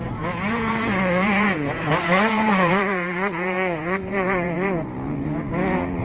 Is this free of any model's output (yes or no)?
no